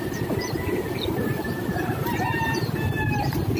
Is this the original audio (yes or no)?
no